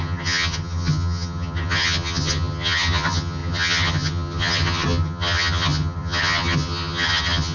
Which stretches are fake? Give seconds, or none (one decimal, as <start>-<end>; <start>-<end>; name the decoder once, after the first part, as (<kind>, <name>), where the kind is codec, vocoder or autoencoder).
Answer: 0.0-7.5 (vocoder, HiFi-GAN)